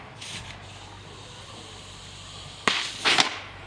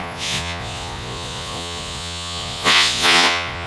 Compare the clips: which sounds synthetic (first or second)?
second